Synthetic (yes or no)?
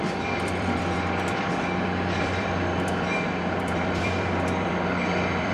yes